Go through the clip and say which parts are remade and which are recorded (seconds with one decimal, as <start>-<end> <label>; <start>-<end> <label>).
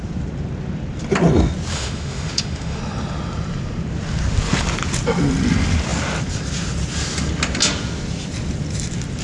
0.0-1.7 recorded; 1.7-2.8 remade; 2.8-9.2 recorded